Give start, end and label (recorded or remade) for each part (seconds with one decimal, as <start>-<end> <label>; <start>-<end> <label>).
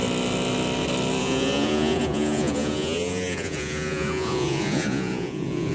0.0-1.2 recorded; 1.2-5.7 remade